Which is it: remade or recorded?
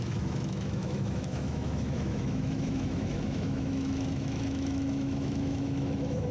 remade